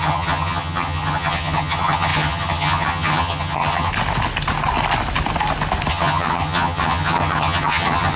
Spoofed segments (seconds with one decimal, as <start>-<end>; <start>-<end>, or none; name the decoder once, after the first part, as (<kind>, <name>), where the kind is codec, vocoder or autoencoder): 0.0-3.9 (vocoder, HiFi-GAN); 5.9-8.2